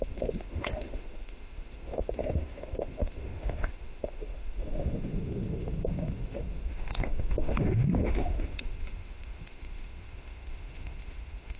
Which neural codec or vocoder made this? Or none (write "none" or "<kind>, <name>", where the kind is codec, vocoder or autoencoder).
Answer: autoencoder, DAC-VAE